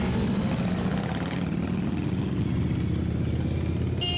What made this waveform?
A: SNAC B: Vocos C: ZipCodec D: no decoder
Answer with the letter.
D